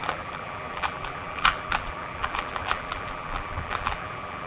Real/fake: fake